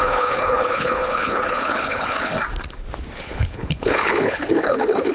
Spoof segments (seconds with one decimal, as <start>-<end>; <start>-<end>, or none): 0.0-2.3; 3.2-5.1